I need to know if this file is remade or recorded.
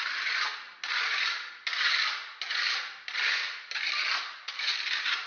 recorded